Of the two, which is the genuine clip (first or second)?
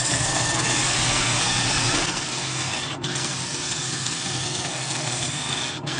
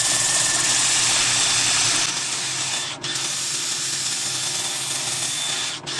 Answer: second